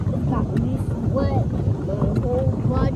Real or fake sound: real